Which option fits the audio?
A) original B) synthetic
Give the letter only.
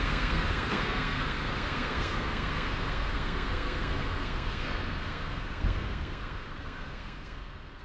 B